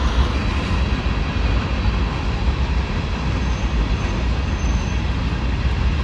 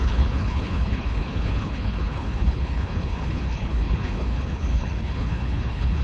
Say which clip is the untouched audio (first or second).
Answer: first